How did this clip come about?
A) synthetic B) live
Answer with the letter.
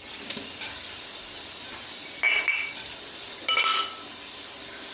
B